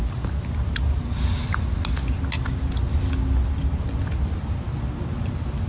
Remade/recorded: recorded